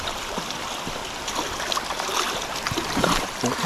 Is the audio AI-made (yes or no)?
no